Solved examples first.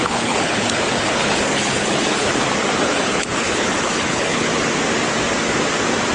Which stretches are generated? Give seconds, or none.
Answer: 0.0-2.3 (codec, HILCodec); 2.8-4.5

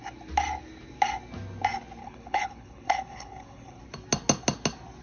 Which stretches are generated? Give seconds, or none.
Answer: 2.0-3.8 (codec, HILCodec)

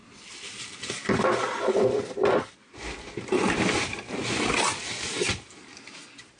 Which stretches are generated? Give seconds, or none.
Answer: none

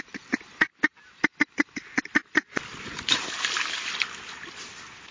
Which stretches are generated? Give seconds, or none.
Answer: none